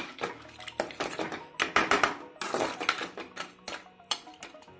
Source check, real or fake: real